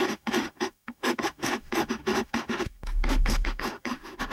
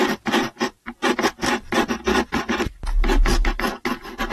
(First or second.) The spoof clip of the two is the first